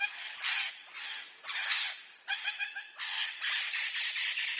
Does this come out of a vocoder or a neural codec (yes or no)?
yes